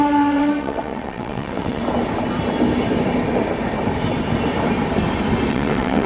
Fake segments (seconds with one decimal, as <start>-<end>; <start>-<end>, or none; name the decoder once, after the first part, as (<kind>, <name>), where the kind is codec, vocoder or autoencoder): 0.0-1.8 (vocoder, WaveNeXt); 5.5-6.1